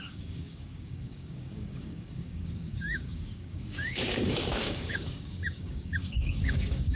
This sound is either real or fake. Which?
fake